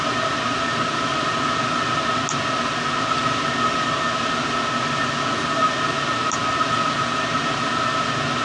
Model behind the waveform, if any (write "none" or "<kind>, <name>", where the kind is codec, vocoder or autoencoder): none